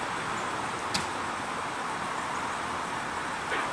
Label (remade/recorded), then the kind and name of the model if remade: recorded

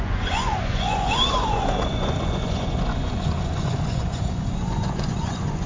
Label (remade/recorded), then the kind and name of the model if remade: remade, vocoder, Vocos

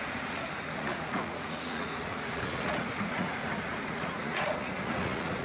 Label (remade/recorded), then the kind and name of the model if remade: remade, vocoder, Vocos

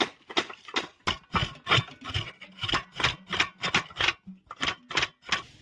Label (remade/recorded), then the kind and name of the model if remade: recorded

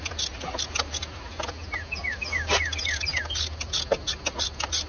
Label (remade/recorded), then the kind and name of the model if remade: recorded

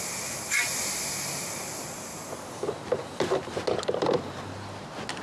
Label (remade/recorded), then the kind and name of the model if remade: recorded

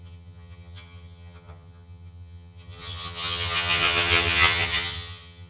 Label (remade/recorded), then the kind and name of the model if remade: remade, vocoder, HiFi-GAN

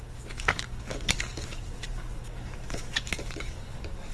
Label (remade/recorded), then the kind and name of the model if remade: remade, codec, DAC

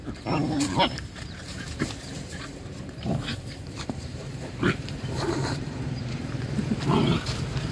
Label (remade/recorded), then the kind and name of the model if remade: remade, vocoder, BigVGAN v2